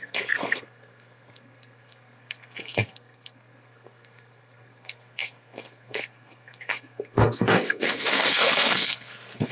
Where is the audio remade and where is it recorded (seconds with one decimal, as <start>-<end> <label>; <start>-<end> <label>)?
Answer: 0.0-9.5 remade